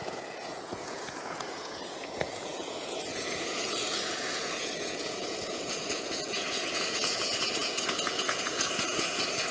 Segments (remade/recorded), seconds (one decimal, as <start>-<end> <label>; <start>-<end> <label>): 0.0-9.5 remade